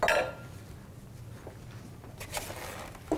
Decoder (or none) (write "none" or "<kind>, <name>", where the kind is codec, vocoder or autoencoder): none